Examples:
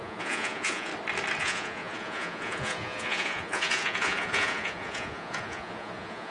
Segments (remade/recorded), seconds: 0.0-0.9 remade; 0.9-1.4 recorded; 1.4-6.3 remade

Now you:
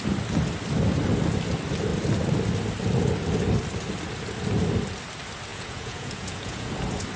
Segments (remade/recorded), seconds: 0.0-5.5 recorded; 5.5-6.7 remade; 6.7-7.2 recorded

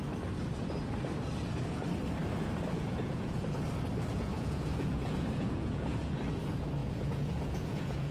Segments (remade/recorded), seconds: 0.0-2.8 recorded; 2.8-3.4 remade; 3.4-4.1 recorded; 4.1-6.0 remade; 6.0-6.8 recorded; 6.8-8.1 remade

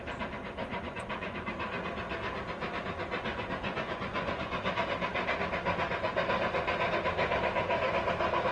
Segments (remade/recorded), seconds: 0.0-0.7 recorded; 0.7-1.5 remade; 1.5-3.3 recorded; 3.3-4.7 remade; 4.7-8.5 recorded

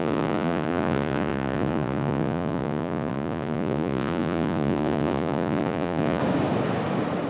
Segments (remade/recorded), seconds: 0.0-6.2 remade; 6.2-7.3 recorded

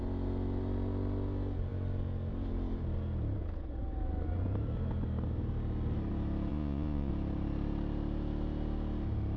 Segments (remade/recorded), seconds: 0.0-6.5 recorded; 6.5-7.1 remade; 7.1-9.4 recorded

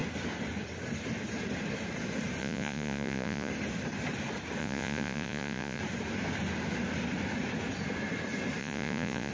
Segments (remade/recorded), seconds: 0.0-2.4 recorded; 2.4-3.5 remade; 3.5-4.6 recorded; 4.6-5.8 remade; 5.8-8.6 recorded; 8.6-9.3 remade

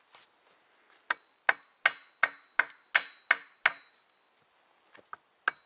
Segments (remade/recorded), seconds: 0.0-5.7 recorded